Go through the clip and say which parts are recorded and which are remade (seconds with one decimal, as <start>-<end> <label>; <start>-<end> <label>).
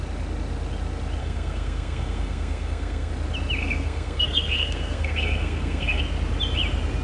0.0-1.2 recorded; 1.2-3.1 remade; 3.1-3.6 recorded; 3.6-6.0 remade; 6.0-7.0 recorded